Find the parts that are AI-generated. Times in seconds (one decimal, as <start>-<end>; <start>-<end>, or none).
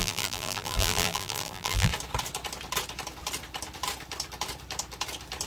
0.0-1.9